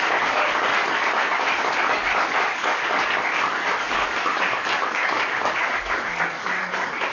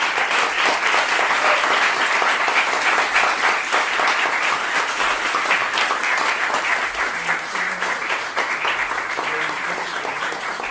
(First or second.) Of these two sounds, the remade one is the first